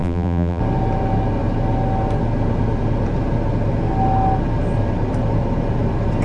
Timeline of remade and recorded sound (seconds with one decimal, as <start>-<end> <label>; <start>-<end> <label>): 0.0-0.6 remade; 0.6-6.2 recorded